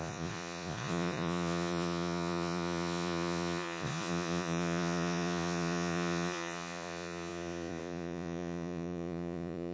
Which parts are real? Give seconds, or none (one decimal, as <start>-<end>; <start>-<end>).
none